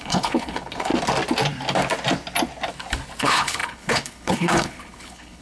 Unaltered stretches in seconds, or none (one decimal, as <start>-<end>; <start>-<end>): 0.9-3.2